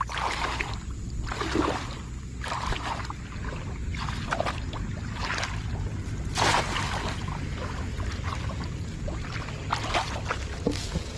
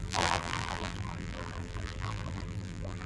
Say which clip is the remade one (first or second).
second